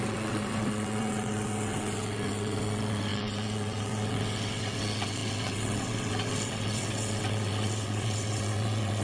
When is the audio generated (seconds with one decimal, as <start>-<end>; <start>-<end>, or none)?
0.0-9.0